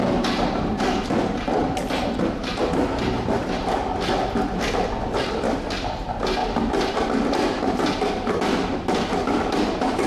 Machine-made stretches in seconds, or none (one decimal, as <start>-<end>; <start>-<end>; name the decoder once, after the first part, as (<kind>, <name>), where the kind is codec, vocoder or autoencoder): none